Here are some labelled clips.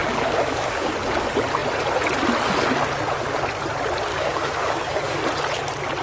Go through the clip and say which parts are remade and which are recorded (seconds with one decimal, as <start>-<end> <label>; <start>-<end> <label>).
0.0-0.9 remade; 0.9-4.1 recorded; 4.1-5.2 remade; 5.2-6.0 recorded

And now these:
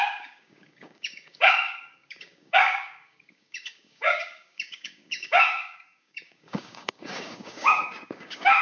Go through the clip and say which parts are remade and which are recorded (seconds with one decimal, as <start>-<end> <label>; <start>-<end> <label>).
0.0-8.6 remade

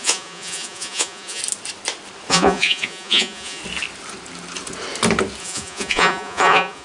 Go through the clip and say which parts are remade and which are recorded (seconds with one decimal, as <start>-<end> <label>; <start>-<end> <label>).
0.0-1.4 remade; 1.4-2.3 recorded; 2.3-3.6 remade; 3.6-5.4 recorded; 5.4-6.8 remade

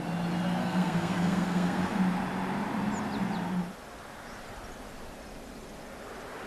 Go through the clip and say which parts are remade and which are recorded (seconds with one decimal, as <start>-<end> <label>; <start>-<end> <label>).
0.0-0.6 recorded; 0.6-2.0 remade; 2.0-6.5 recorded

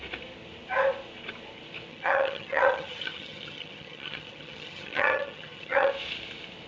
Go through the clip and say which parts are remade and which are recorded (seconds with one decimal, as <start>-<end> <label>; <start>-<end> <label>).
0.0-1.9 recorded; 1.9-5.9 remade; 5.9-6.7 recorded

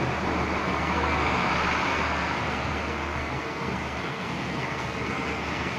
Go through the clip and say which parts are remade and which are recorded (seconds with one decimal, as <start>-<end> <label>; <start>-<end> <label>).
0.0-0.6 recorded; 0.6-1.5 remade; 1.5-1.9 recorded; 1.9-5.8 remade